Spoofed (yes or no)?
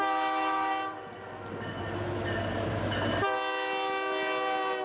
no